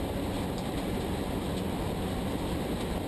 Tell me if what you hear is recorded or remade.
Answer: recorded